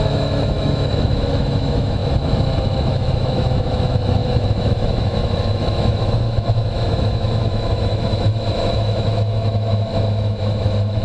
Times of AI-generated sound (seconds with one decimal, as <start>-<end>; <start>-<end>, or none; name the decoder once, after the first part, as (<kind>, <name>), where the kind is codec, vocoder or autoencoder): 0.0-2.0 (autoencoder, DAC-VAE); 2.9-11.0